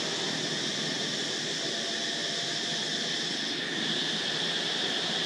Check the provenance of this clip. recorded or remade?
recorded